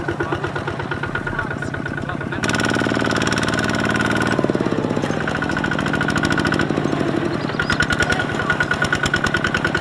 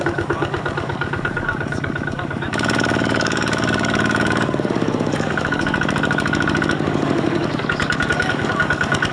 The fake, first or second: second